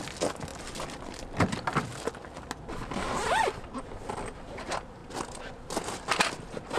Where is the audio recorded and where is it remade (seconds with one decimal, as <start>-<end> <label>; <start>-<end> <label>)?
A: 0.0-6.8 recorded